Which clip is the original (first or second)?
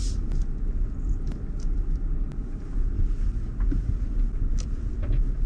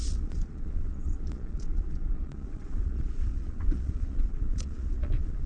first